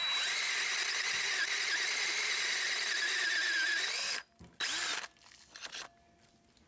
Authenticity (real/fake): real